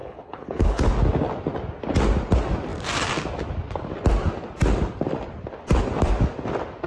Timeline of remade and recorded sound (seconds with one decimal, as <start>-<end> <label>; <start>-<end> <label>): 0.0-0.9 remade; 0.9-6.9 recorded